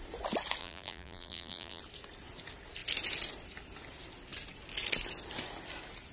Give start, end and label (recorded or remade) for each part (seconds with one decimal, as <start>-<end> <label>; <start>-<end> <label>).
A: 0.0-0.6 recorded; 0.6-1.8 remade; 1.8-6.1 recorded